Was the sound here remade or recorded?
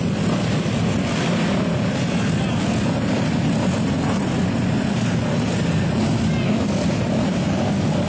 recorded